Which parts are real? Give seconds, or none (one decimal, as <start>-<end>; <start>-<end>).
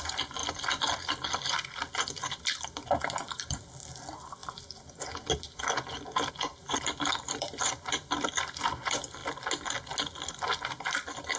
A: 4.4-6.3; 9.2-10.3